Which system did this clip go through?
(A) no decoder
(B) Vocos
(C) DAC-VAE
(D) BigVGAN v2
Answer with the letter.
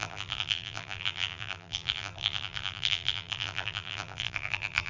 D